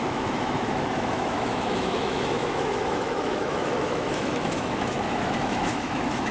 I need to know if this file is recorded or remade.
remade